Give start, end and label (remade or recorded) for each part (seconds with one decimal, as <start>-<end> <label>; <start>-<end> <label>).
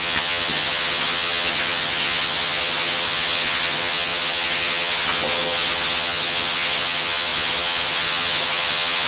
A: 0.0-9.1 remade